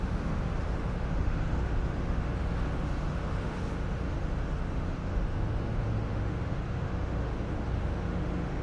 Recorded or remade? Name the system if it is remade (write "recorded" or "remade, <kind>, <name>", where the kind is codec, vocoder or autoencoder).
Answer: remade, autoencoder, DAC-VAE